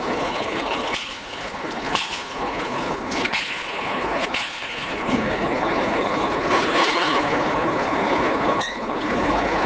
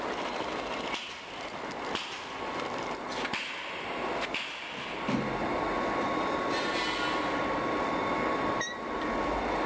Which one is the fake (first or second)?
first